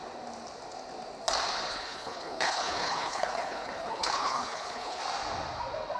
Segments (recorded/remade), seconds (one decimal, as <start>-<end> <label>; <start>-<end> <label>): 0.0-1.7 recorded; 1.7-5.0 remade; 5.0-6.0 recorded